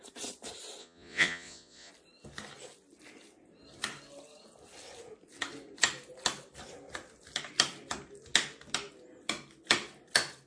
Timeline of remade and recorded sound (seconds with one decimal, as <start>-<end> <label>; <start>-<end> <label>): 0.0-0.8 recorded; 0.8-1.9 remade; 1.9-10.5 recorded